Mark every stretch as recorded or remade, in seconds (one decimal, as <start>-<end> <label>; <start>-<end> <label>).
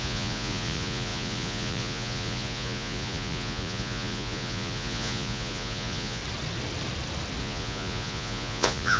0.0-6.2 remade; 6.2-7.4 recorded; 7.4-9.0 remade